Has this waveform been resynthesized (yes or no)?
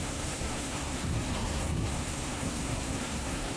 yes